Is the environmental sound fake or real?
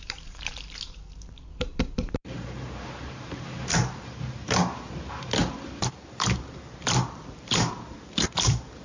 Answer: fake